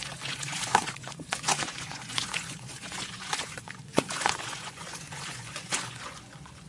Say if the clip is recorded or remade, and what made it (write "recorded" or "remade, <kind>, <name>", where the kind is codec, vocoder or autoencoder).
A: remade, vocoder, Vocos